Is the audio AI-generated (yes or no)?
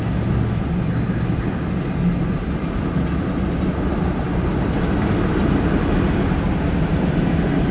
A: no